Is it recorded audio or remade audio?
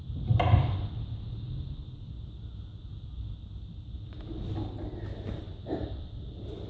recorded